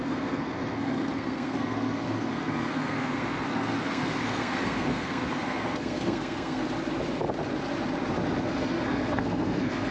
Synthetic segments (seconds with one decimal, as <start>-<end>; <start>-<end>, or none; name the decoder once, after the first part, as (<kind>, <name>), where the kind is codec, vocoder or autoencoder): 0.0-6.6 (codec, SNAC); 8.4-9.9